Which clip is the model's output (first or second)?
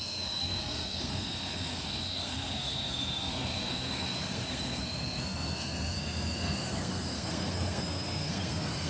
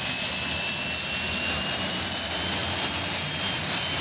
first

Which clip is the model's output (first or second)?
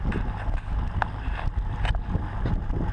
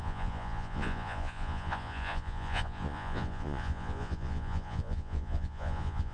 second